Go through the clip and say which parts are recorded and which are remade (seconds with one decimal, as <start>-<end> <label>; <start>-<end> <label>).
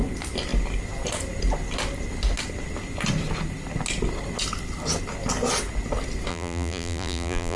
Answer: 0.0-6.3 recorded; 6.3-7.6 remade